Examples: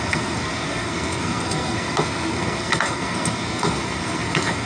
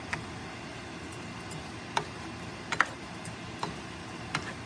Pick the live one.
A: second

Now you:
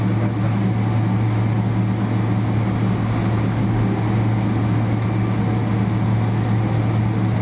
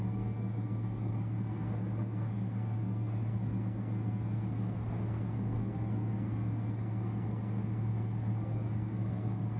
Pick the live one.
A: first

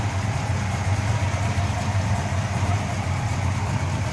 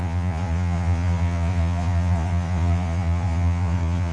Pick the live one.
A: first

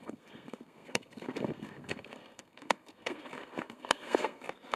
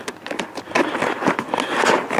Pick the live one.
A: second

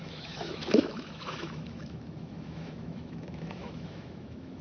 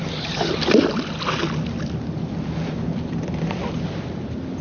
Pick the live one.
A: second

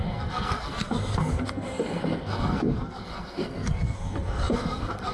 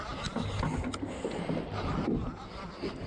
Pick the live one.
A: second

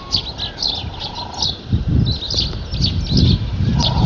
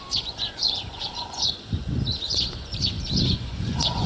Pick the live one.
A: first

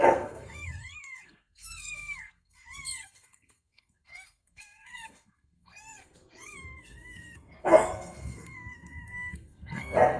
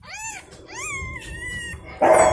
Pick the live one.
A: second